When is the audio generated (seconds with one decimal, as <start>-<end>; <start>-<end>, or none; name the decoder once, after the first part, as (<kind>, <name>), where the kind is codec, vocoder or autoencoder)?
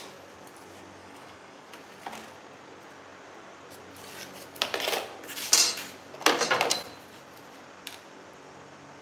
1.0-1.7 (codec, DAC)